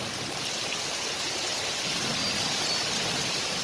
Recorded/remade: recorded